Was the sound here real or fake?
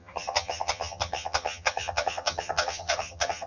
fake